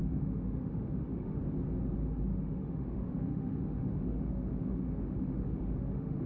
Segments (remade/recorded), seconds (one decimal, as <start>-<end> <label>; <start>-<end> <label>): 0.0-1.4 remade; 1.4-2.3 recorded; 2.3-6.3 remade